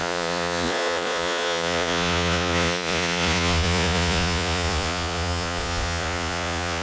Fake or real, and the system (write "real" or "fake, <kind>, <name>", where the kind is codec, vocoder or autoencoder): fake, vocoder, Vocos